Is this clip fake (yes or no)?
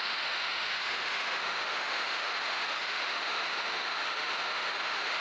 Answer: yes